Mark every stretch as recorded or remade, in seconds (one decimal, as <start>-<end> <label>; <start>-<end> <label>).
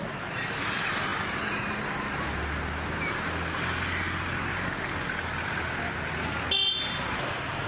0.0-7.7 recorded